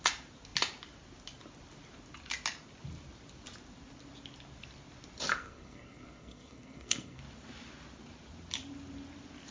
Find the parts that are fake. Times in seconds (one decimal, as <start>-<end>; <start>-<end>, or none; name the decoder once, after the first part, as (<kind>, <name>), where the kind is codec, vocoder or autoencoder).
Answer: 5.3-7.2 (codec, SNAC)